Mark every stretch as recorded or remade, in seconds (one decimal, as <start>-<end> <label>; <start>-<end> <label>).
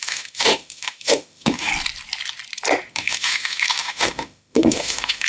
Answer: 0.0-1.7 remade; 1.7-2.9 recorded; 2.9-5.3 remade